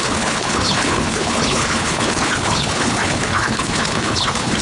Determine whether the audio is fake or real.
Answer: fake